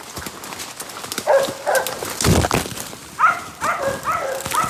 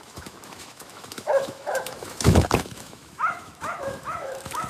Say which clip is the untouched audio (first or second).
first